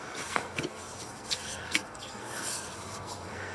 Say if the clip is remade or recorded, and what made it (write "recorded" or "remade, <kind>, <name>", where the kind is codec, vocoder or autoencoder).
remade, codec, SNAC